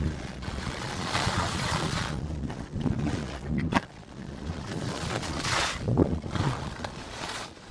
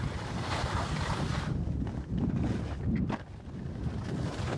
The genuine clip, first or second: second